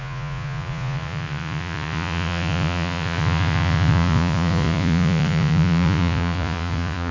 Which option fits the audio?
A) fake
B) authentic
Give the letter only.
A